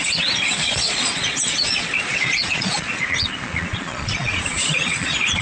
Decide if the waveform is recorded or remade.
remade